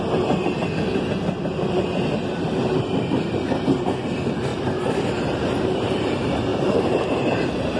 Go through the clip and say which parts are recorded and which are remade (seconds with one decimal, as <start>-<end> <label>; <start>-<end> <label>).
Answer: 0.0-4.5 recorded; 4.5-6.0 remade; 6.0-6.5 recorded; 6.5-7.8 remade

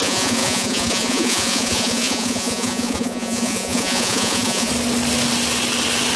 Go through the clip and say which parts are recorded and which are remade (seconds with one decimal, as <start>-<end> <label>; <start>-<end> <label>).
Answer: 0.0-4.7 remade; 4.7-6.2 recorded

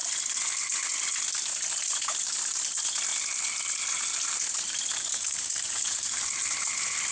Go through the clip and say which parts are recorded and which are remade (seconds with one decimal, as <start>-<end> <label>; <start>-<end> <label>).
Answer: 0.0-5.1 recorded; 5.1-6.2 remade; 6.2-7.1 recorded

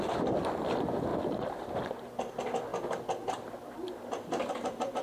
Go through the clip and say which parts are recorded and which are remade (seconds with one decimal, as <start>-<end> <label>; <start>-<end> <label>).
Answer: 0.0-5.0 recorded

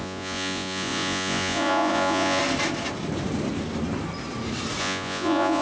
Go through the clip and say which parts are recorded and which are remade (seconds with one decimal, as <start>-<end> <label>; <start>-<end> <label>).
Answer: 0.0-2.4 remade; 2.4-4.8 recorded; 4.8-5.6 remade